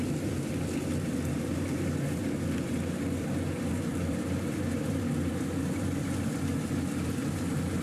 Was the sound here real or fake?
fake